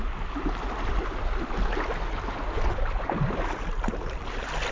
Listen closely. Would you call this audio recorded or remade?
recorded